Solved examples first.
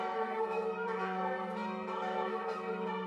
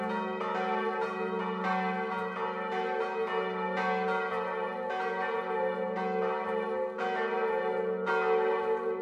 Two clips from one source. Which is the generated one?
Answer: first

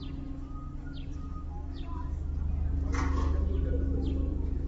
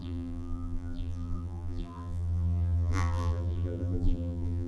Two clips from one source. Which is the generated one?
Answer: second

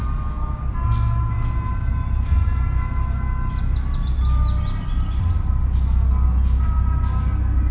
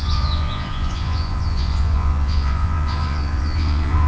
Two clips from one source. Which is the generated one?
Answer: second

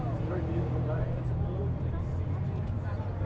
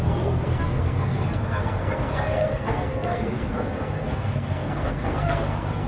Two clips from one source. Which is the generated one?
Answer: second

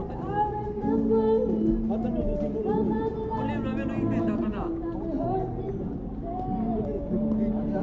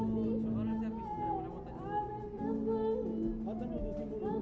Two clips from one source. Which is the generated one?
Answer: first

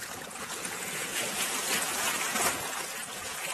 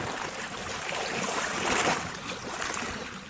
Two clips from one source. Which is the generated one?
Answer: first